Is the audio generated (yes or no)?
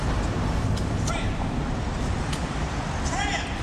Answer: yes